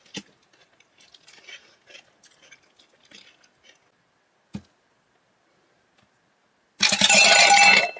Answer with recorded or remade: recorded